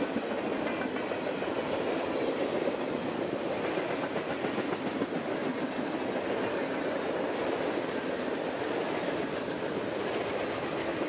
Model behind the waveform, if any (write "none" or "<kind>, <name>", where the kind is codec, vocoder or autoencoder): none